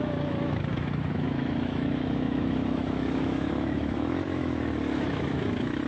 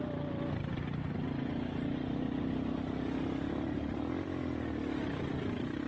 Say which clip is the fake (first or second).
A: first